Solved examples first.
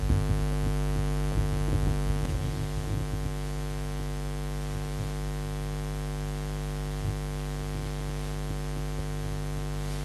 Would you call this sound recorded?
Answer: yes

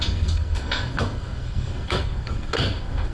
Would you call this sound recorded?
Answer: no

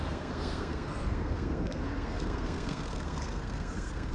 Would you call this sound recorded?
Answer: no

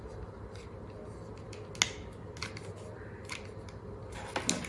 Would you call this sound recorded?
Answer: yes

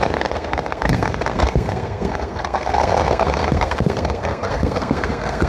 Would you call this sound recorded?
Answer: no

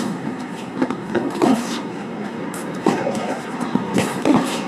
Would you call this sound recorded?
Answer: no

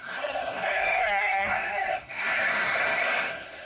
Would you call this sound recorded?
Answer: no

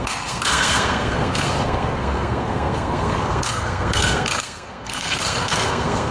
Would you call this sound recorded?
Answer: no